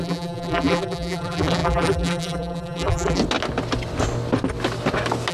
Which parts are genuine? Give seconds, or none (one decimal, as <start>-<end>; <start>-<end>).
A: 3.2-5.3